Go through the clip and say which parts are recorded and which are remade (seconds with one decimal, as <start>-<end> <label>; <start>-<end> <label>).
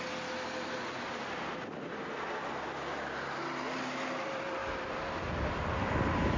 0.0-6.4 recorded